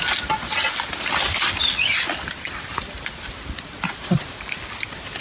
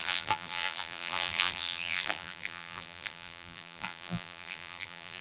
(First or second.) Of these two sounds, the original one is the first